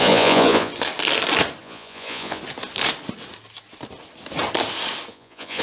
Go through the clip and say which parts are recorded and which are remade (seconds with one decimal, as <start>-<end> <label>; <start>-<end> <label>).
0.0-0.7 remade; 0.7-1.6 recorded; 1.6-2.4 remade; 2.4-5.1 recorded; 5.1-5.6 remade